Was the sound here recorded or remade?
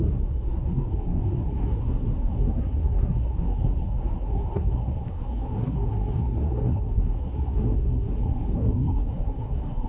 remade